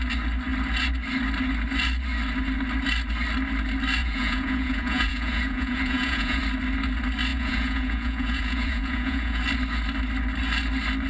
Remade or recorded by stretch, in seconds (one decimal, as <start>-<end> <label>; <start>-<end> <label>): 0.0-4.0 recorded; 4.0-6.4 remade; 6.4-7.3 recorded; 7.3-9.4 remade; 9.4-11.1 recorded